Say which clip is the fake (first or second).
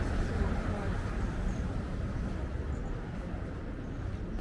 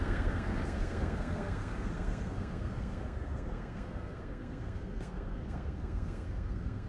second